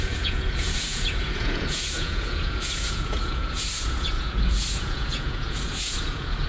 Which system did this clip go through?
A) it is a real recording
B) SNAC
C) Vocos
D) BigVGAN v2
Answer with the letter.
C